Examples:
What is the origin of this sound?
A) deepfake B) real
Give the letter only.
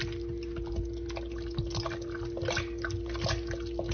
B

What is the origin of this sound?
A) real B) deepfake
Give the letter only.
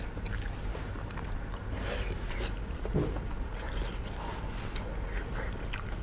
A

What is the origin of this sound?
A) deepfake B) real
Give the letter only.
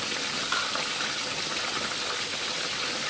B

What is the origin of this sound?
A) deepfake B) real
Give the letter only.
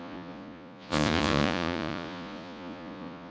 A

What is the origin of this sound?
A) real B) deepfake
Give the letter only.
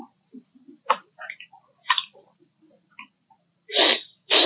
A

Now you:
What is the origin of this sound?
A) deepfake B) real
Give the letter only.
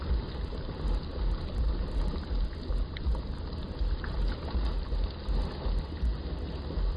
B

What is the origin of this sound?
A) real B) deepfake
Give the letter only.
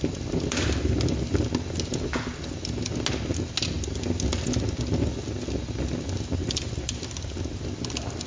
A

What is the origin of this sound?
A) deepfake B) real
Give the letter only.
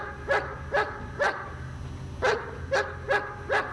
B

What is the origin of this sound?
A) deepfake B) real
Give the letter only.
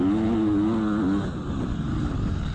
B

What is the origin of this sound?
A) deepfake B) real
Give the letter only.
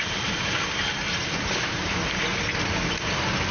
B